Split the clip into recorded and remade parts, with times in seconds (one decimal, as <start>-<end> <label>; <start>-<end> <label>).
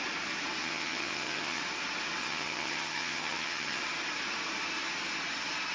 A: 0.0-0.6 recorded; 0.6-1.6 remade; 1.6-2.2 recorded; 2.2-3.8 remade; 3.8-5.7 recorded